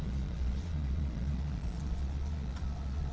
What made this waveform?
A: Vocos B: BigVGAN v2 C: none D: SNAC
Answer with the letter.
A